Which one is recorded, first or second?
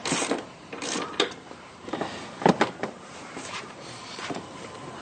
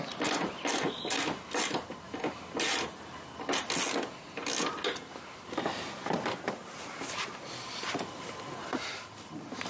second